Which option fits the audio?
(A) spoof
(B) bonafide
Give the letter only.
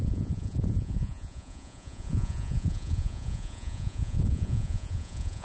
A